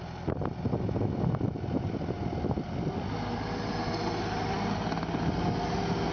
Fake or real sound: real